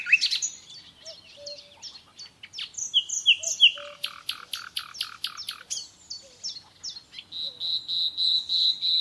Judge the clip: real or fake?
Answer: real